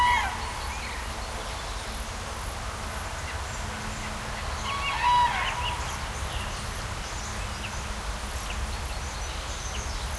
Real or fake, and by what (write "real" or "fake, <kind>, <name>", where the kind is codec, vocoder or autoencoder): real